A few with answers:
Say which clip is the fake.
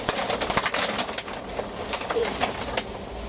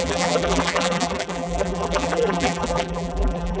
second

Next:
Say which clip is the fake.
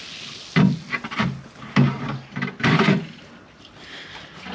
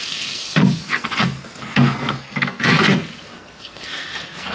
second